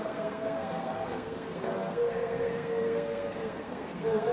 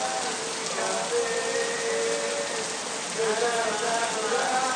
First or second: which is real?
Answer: second